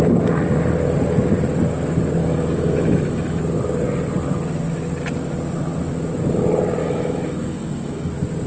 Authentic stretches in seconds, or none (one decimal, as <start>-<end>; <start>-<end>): 0.0-2.2; 3.4-6.8; 8.1-8.5